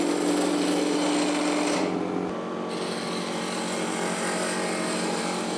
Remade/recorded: recorded